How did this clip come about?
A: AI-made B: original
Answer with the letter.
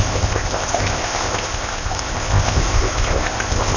A